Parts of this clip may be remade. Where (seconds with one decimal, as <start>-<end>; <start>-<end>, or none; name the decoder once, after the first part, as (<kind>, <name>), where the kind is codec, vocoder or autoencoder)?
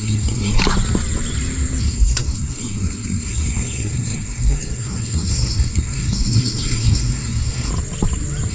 0.0-0.6 (codec, SNAC); 1.8-7.7